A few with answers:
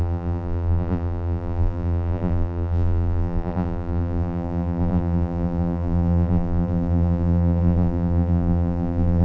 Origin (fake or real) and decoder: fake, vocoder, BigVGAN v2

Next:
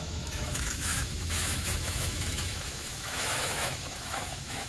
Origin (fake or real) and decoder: fake, autoencoder, DAC-VAE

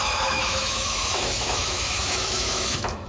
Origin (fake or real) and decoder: fake, autoencoder, DAC-VAE